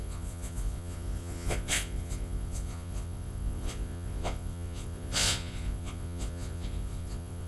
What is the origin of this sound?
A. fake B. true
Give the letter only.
A